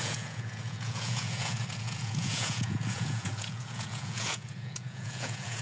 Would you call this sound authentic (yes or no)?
no